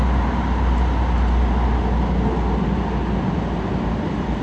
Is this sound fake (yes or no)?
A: no